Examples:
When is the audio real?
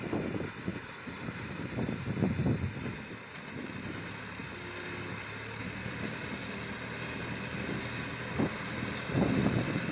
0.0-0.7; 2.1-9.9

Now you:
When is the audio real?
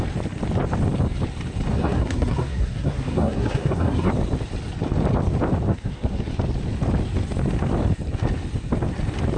0.0-1.7; 4.1-5.7; 6.2-9.4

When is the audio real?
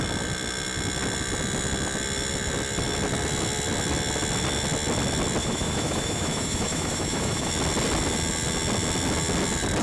0.0-5.4; 7.5-9.8